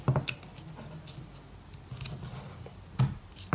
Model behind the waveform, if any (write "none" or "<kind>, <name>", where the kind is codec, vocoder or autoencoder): none